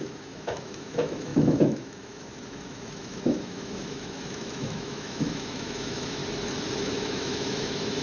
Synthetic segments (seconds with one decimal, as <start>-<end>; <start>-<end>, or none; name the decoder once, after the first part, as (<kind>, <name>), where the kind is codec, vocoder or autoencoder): 0.0-6.2 (autoencoder, DAC-VAE); 6.8-8.0